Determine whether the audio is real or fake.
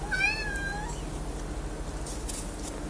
fake